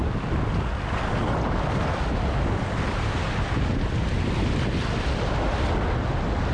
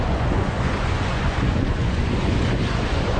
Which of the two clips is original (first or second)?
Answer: first